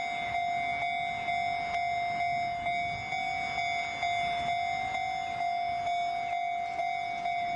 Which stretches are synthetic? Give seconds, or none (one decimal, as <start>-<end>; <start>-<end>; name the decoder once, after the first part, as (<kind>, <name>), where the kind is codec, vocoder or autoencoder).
none